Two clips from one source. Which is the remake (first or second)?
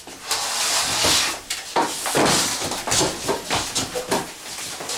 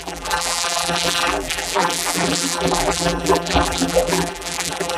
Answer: second